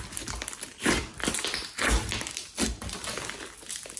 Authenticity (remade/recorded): recorded